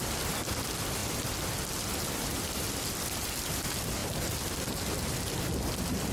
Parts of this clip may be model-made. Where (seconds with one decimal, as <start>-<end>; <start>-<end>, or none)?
0.0-1.0; 1.8-4.0